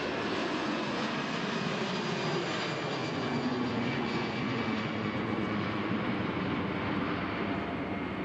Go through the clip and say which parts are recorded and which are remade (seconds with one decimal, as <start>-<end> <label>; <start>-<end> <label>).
0.0-0.4 recorded; 0.4-1.1 remade; 1.1-3.0 recorded; 3.0-5.9 remade; 5.9-8.2 recorded